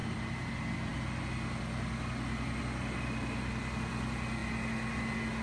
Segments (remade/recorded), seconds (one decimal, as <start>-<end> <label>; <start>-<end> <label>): 0.0-5.4 recorded